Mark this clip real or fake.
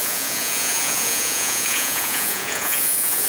fake